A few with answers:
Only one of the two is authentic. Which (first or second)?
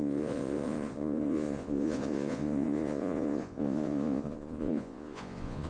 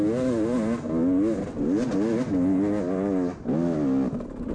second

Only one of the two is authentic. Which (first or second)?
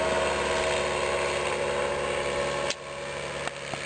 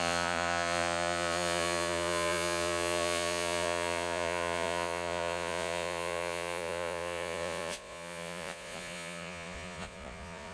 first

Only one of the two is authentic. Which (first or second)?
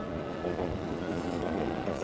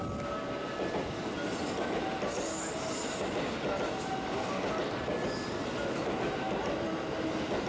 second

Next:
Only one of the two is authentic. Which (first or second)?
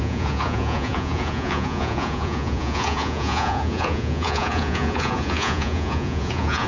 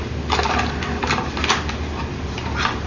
second